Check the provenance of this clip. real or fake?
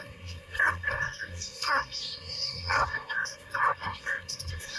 fake